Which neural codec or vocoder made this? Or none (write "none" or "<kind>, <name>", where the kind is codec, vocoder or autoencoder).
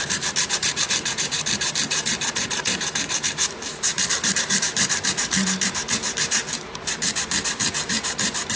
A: vocoder, BigVGAN v2